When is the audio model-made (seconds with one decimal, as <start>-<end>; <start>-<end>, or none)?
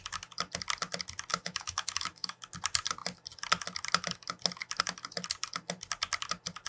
1.3-2.4